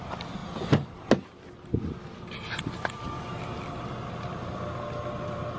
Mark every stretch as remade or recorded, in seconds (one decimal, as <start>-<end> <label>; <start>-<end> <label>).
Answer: 0.0-5.6 recorded